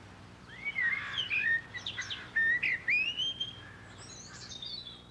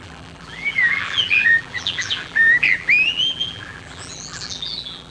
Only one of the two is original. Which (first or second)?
first